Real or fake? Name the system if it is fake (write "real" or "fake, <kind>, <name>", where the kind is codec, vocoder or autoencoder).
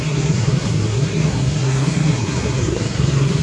fake, codec, SNAC